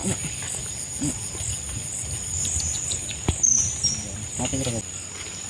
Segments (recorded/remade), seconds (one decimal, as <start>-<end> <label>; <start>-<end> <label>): 0.0-5.5 recorded